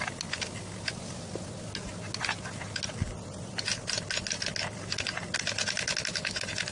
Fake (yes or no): no